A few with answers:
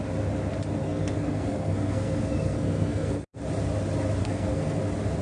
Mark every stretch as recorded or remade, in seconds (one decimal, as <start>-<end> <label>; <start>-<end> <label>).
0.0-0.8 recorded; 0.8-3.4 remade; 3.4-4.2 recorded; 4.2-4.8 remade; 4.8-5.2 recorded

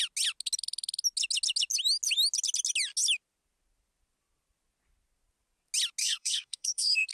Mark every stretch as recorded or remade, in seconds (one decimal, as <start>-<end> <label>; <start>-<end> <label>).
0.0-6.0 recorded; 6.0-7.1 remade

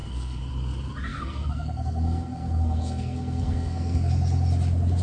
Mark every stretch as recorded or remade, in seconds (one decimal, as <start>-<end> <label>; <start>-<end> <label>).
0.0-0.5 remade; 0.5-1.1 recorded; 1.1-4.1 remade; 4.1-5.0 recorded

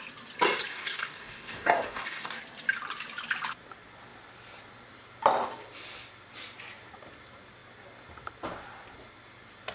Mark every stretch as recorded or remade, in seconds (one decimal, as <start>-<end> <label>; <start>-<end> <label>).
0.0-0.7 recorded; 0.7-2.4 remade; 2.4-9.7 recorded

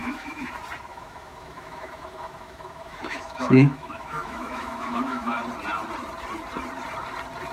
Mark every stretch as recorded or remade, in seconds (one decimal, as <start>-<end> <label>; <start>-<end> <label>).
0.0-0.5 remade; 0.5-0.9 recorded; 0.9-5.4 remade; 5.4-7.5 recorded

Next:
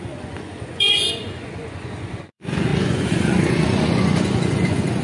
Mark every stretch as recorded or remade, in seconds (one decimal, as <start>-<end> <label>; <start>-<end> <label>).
0.0-5.0 remade

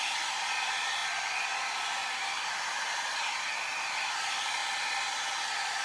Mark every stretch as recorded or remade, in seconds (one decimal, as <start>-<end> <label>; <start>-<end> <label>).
0.0-4.6 remade; 4.6-5.8 recorded

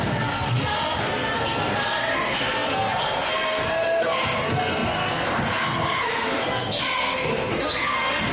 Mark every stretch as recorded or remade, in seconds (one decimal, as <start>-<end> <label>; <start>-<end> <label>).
0.0-8.3 remade